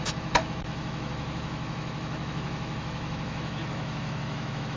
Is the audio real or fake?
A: fake